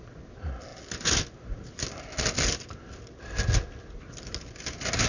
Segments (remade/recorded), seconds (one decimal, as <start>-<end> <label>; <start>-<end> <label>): 0.0-5.1 recorded